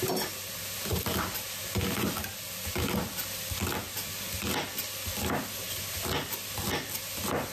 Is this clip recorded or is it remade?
recorded